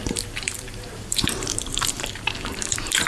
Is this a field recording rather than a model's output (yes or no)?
no